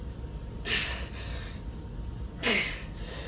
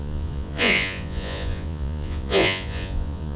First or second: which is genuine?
first